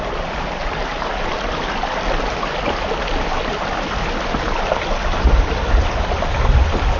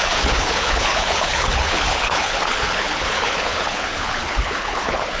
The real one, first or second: first